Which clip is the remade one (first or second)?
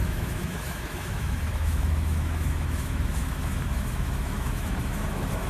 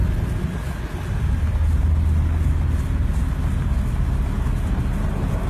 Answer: first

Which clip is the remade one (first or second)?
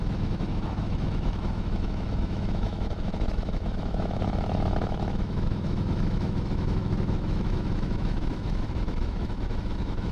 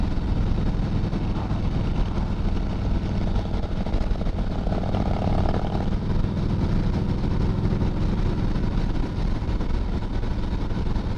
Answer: first